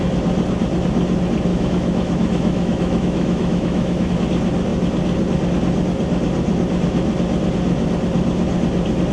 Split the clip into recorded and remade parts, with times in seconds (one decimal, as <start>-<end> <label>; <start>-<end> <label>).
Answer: 0.0-1.5 recorded; 1.5-4.1 remade; 4.1-9.1 recorded

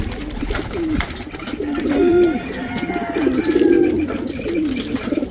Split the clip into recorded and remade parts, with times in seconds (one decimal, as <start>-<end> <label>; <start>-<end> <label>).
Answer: 0.0-5.3 recorded

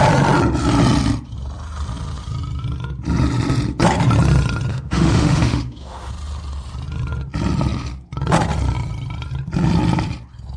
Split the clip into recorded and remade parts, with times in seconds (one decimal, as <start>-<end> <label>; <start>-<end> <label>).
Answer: 0.0-4.7 recorded; 4.7-6.1 remade; 6.1-10.6 recorded

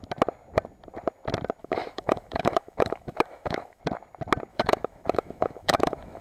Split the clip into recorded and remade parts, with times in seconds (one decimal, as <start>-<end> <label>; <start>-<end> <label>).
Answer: 0.0-1.6 recorded; 1.6-3.8 remade; 3.8-4.5 recorded; 4.5-6.2 remade

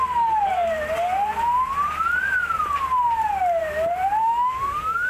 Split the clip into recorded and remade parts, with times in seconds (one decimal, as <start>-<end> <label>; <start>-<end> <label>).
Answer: 0.0-4.2 recorded; 4.2-5.1 remade